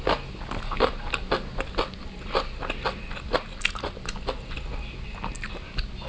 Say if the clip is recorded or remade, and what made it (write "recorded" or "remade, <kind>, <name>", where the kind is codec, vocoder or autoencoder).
recorded